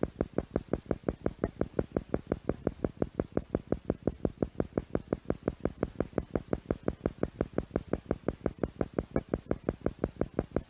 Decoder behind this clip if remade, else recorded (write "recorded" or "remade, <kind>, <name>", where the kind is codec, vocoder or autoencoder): recorded